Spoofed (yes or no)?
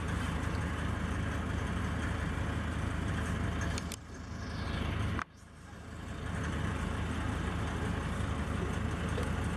no